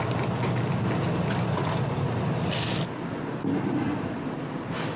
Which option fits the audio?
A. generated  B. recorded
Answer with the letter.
B